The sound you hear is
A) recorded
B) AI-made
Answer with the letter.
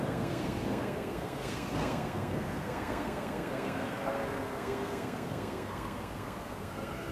B